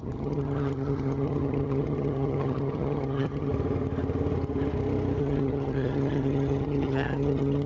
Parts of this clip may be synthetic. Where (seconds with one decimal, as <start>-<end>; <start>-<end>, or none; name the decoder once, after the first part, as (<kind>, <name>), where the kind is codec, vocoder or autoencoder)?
0.0-3.5 (vocoder, HiFi-GAN); 5.2-7.7